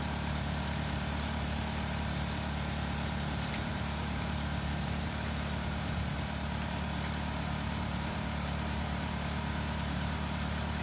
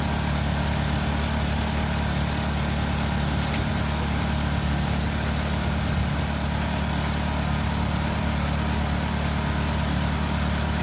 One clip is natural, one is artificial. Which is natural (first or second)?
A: second